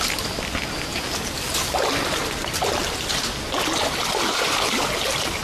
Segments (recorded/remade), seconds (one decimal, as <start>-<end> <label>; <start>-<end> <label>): 0.0-5.4 recorded